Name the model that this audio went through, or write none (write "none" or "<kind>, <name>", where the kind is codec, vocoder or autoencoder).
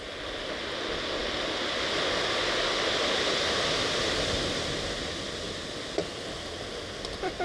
none